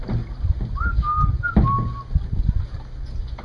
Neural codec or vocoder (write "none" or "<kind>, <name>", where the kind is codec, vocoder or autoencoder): none